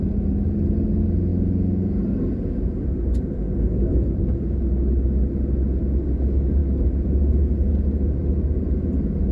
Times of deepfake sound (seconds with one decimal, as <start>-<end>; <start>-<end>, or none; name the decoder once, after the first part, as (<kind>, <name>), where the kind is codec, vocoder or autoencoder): 3.6-4.1 (codec, SNAC)